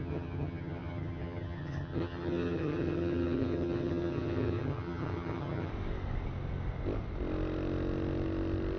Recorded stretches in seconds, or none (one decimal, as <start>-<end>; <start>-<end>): 5.7-8.8

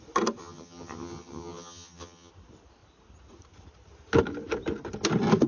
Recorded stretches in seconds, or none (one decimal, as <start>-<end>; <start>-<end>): 0.0-0.4; 2.3-5.5

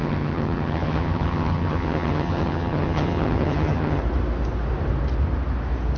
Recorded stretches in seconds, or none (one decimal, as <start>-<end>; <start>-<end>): 4.0-6.0

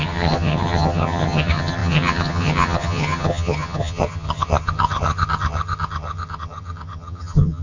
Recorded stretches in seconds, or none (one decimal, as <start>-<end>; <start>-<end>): none

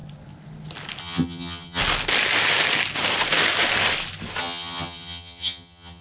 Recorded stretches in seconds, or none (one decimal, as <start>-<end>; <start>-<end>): 0.0-1.0; 1.8-4.4